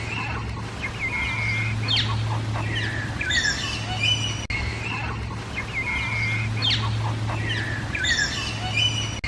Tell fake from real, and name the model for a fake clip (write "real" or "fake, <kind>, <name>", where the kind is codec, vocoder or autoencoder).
real